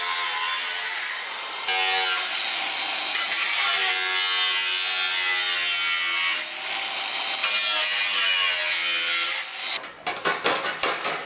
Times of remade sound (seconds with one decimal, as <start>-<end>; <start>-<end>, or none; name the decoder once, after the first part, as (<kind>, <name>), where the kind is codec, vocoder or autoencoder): 2.9-3.9 (vocoder, BigVGAN v2)